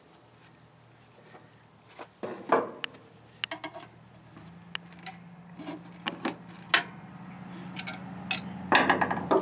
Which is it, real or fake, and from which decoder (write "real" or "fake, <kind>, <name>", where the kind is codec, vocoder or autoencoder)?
real